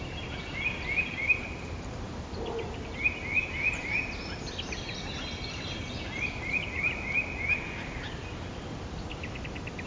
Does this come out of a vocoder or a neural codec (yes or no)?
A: no